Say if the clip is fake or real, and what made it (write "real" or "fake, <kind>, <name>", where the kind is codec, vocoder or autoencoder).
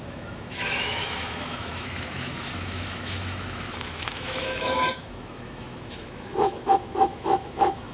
fake, autoencoder, DAC-VAE